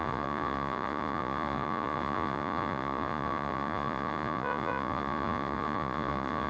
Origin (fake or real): fake